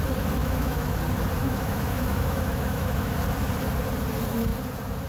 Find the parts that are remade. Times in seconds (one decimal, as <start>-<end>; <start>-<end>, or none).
0.4-1.0; 1.4-3.1